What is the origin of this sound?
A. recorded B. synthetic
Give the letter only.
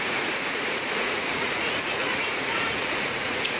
B